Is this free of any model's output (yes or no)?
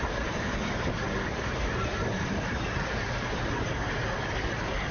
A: yes